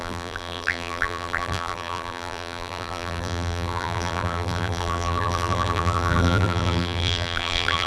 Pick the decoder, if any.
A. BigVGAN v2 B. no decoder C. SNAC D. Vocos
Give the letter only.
A